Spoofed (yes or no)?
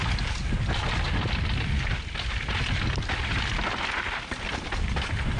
no